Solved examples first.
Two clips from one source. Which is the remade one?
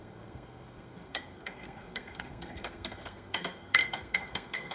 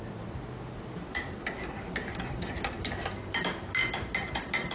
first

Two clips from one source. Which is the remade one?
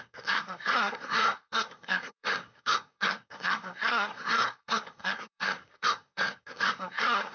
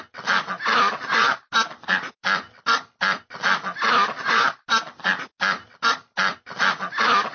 first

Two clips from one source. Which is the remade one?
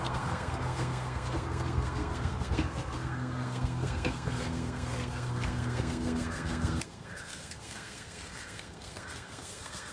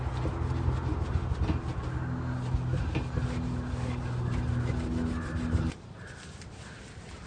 first